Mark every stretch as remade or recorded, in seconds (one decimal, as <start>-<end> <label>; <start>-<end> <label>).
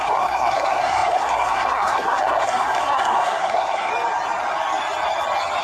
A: 0.0-3.9 remade; 3.9-5.6 recorded